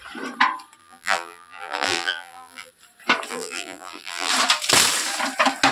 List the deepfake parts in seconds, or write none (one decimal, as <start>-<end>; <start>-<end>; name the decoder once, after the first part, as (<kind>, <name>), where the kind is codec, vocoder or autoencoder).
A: 0.8-2.7 (vocoder, BigVGAN v2); 3.3-4.3